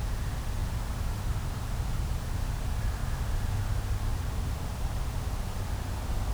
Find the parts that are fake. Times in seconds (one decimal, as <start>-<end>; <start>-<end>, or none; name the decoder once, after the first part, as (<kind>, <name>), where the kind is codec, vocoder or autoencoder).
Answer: 0.6-1.2 (vocoder, BigVGAN v2); 4.1-5.2

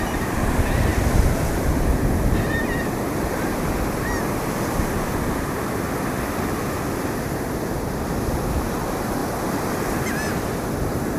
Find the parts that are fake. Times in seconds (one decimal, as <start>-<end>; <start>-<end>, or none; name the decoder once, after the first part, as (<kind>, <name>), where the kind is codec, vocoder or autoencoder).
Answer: none

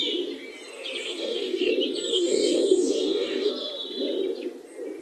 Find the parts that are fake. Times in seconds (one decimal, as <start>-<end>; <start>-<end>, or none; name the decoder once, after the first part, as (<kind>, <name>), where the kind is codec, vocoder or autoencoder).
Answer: 1.0-1.7 (codec, DAC); 2.1-3.5

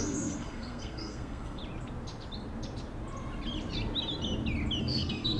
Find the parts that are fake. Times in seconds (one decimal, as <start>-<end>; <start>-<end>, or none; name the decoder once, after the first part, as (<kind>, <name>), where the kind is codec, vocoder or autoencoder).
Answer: 0.0-1.6 (codec, SNAC); 4.8-5.4

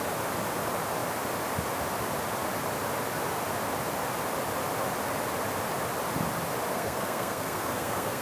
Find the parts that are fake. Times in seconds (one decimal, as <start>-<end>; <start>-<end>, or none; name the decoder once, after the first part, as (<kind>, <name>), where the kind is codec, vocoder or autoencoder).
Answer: 6.7-8.2 (codec, SNAC)

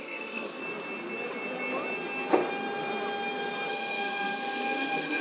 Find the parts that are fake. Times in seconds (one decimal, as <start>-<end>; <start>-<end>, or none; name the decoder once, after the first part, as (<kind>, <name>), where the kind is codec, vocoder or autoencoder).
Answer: 0.0-0.6 (codec, SNAC); 3.7-5.2

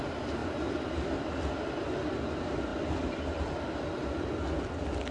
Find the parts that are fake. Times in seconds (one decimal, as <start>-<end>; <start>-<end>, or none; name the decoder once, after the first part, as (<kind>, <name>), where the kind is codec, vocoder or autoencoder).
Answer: none

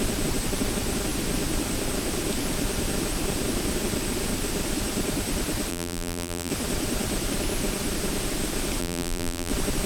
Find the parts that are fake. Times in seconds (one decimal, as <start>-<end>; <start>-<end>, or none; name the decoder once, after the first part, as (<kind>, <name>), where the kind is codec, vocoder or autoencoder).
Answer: 5.7-6.5 (vocoder, BigVGAN v2); 8.8-9.5